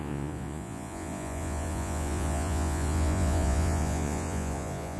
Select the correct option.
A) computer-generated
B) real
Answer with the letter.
A